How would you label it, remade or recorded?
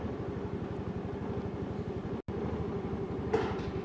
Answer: recorded